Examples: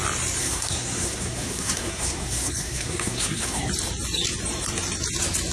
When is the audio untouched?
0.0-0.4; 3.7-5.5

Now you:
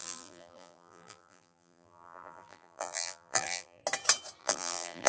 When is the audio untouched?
3.8-4.4

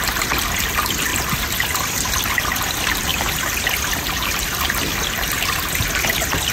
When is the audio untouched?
0.0-1.1; 2.1-6.5

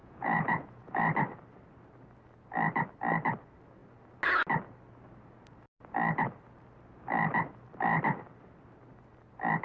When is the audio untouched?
1.0-9.6

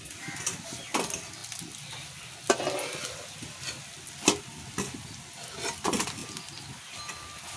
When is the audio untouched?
0.0-7.6

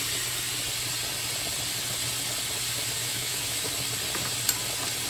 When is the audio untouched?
0.0-3.0; 3.7-5.1

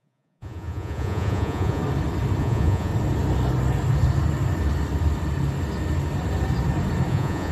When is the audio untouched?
1.8-2.4; 2.9-7.1

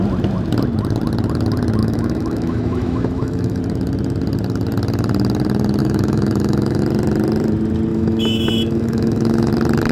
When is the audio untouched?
0.0-1.8; 3.6-5.8; 6.8-7.9; 9.5-9.9